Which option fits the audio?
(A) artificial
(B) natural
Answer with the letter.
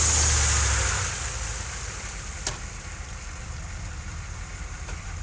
B